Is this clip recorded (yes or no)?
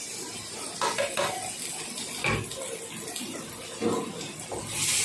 yes